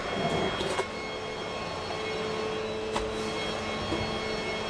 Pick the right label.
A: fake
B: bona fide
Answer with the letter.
B